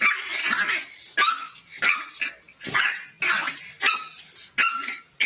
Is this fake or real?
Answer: real